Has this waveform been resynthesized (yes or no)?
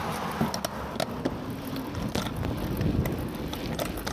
no